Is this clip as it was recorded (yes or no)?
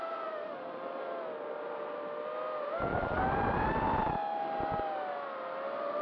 yes